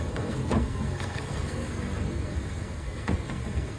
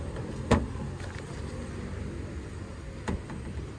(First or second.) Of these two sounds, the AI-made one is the first